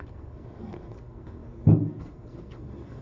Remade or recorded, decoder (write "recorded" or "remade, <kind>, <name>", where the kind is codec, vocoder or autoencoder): remade, codec, SNAC